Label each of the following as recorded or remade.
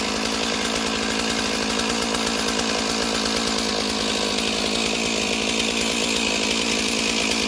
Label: recorded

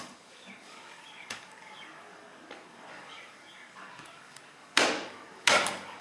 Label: remade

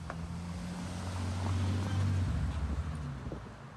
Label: recorded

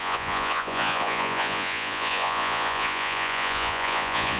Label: remade